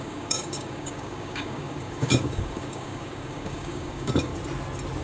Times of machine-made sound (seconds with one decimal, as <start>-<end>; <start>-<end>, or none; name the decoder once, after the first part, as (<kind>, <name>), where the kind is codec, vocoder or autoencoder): 0.0-4.3 (codec, DAC)